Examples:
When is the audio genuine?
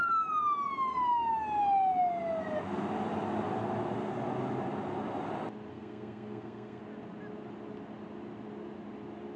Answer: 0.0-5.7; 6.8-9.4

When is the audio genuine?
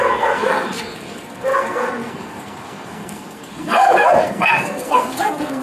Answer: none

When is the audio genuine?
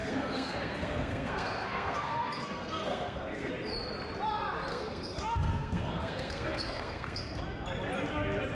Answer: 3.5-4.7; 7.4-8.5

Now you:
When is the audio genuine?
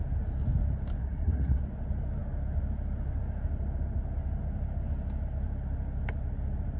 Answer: 0.0-1.0; 1.6-6.8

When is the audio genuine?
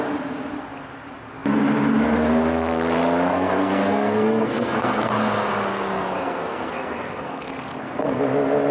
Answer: 0.0-3.3; 5.1-5.7; 8.2-8.7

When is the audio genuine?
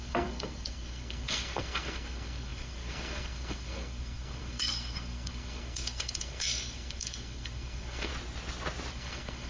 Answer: 8.1-8.9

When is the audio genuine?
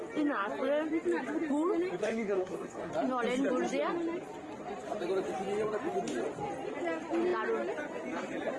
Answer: 0.0-2.0; 2.9-8.6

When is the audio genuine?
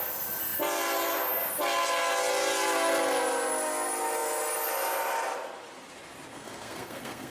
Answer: 0.0-6.3